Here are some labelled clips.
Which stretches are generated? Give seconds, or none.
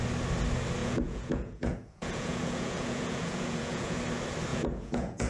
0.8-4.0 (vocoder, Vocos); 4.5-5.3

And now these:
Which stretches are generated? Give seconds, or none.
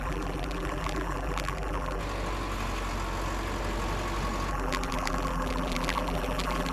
0.0-2.0 (vocoder, BigVGAN v2); 4.5-6.7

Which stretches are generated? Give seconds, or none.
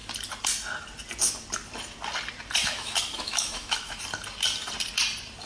2.6-4.0 (autoencoder, DAC-VAE)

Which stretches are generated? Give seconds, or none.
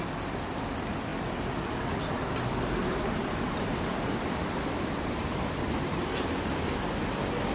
none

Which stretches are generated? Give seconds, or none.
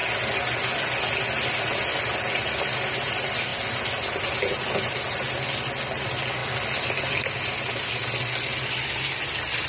0.0-1.0 (vocoder, BigVGAN v2); 3.5-4.4; 6.4-7.1; 8.5-9.1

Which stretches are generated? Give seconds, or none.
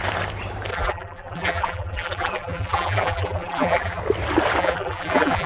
0.7-4.0 (vocoder, BigVGAN v2); 4.6-5.5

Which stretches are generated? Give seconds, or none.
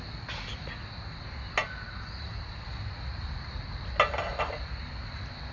none